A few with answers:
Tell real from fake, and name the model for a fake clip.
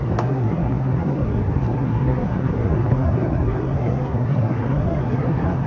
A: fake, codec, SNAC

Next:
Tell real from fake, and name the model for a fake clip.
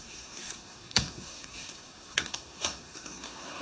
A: fake, codec, SNAC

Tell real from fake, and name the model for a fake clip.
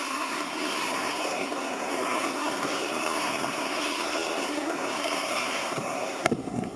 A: fake, codec, SNAC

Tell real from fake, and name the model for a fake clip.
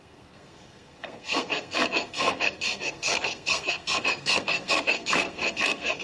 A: fake, codec, SNAC